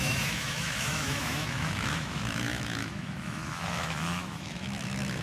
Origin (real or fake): fake